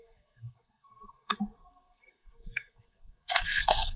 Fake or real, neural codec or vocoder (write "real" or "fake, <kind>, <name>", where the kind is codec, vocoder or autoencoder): fake, codec, SNAC